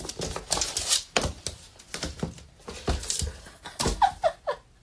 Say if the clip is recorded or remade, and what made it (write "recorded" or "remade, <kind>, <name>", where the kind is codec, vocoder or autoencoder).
recorded